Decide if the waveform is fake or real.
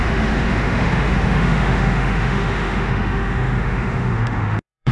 fake